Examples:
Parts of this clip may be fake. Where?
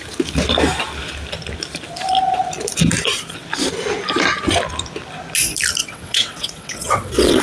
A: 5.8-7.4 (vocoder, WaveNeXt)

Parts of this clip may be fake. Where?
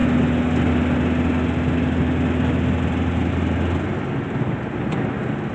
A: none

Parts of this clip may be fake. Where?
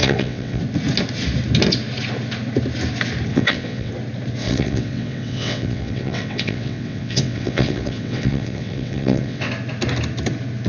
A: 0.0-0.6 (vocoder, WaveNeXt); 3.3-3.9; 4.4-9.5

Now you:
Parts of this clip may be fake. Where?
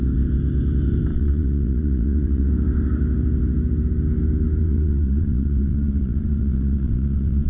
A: 1.1-2.5 (vocoder, WaveNeXt); 4.6-7.5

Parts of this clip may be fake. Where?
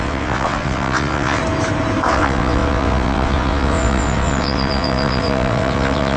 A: 0.0-1.4 (vocoder, WaveNeXt); 2.1-6.2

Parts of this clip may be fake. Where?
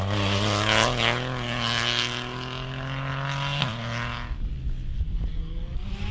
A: none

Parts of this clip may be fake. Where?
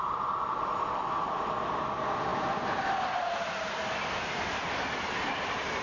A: none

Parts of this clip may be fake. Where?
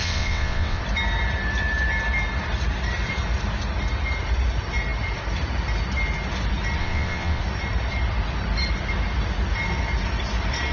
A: 0.0-0.8 (vocoder, WaveNeXt); 6.8-7.4